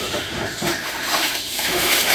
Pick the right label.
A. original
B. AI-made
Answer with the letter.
B